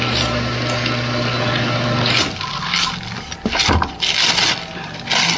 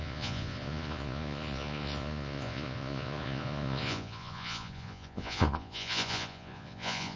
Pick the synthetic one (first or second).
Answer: second